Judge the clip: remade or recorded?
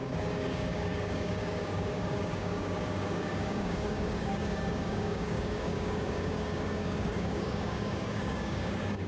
remade